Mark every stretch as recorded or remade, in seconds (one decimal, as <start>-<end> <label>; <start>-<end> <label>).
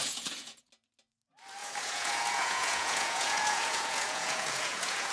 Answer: 0.0-0.7 remade; 0.7-1.6 recorded; 1.6-5.1 remade